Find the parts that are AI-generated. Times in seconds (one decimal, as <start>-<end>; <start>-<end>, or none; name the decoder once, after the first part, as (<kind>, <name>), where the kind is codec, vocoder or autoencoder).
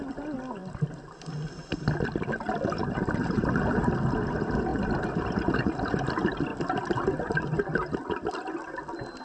2.8-4.0 (vocoder, BigVGAN v2); 4.7-5.9